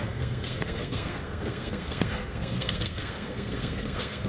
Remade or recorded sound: remade